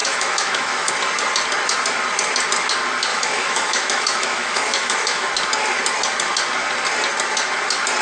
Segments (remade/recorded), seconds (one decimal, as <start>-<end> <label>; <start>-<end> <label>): 0.0-0.9 remade; 0.9-3.1 recorded; 3.1-5.3 remade; 5.3-8.0 recorded